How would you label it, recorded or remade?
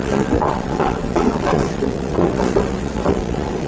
remade